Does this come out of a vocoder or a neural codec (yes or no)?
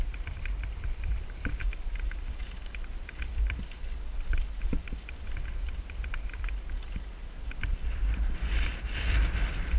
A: yes